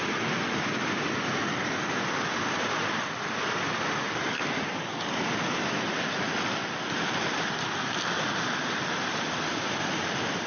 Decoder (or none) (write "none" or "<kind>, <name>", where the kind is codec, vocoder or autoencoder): none